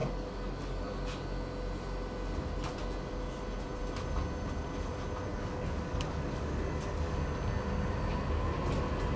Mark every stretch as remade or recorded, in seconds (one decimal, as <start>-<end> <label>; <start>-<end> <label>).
0.0-0.9 remade; 0.9-5.3 recorded; 5.3-7.1 remade; 7.1-9.2 recorded